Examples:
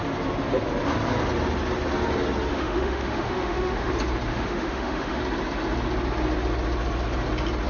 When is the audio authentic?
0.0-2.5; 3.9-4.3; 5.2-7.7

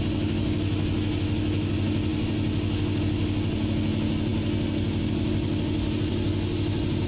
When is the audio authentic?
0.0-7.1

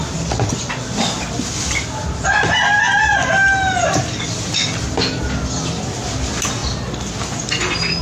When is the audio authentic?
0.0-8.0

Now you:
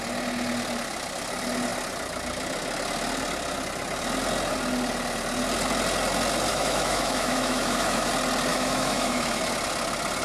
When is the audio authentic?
0.0-6.5; 8.1-8.5; 9.4-10.2

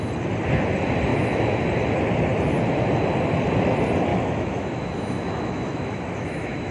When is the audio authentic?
0.0-1.1; 1.6-4.1

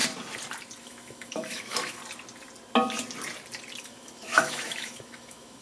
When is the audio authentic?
0.0-0.8; 2.0-3.8